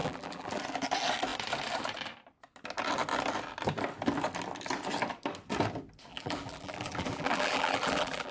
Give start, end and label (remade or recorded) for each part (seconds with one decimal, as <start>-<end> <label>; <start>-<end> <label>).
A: 0.0-0.6 remade; 0.6-6.1 recorded; 6.1-8.3 remade